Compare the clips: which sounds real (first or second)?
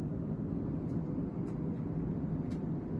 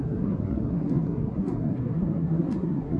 first